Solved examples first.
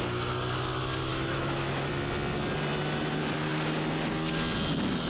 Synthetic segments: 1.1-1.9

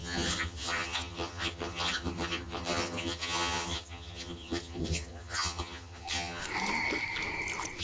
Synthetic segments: 0.0-6.4

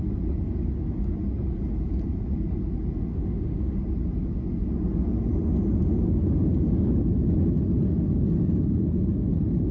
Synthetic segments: 3.1-3.7